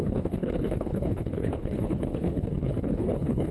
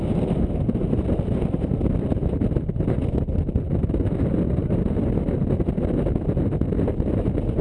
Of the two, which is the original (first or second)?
second